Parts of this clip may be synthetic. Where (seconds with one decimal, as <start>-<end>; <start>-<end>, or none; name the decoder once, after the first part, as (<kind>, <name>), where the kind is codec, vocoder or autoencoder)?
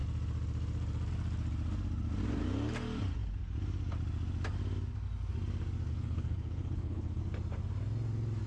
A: 5.9-7.2 (codec, HILCodec)